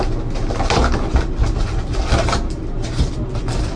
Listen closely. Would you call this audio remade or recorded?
recorded